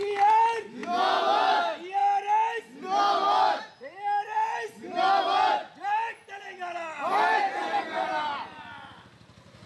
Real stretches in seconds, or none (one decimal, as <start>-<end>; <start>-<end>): 0.0-0.8; 1.4-9.7